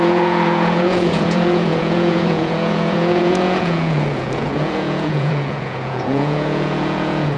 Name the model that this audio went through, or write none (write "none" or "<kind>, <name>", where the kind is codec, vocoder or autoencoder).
vocoder, Vocos